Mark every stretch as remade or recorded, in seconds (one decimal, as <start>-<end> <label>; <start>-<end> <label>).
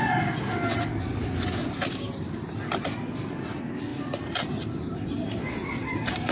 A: 0.0-3.9 recorded; 3.9-6.3 remade